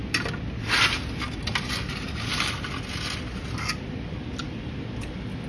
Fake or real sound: real